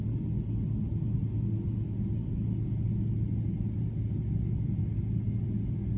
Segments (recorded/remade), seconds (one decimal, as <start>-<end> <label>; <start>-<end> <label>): 0.0-6.0 recorded